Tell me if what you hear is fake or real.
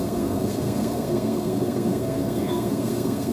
fake